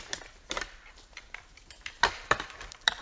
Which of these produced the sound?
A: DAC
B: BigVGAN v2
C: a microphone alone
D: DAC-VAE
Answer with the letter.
B